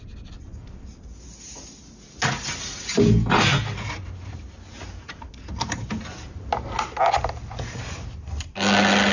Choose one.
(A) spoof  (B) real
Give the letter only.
B